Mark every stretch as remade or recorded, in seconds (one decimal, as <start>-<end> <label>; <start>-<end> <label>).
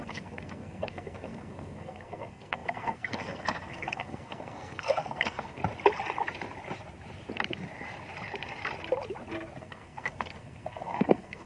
0.0-5.6 remade; 5.6-9.6 recorded; 9.6-11.5 remade